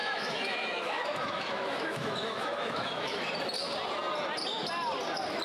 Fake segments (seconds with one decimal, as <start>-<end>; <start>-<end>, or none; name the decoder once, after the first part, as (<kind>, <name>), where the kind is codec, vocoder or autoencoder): 0.0-3.2 (autoencoder, DAC-VAE)